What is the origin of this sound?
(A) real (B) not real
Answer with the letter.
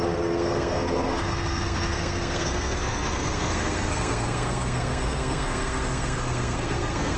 B